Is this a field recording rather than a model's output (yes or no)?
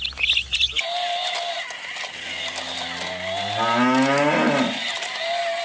yes